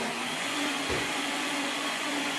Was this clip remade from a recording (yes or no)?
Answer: yes